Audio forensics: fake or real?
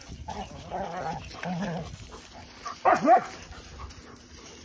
real